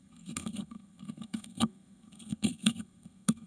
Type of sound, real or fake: fake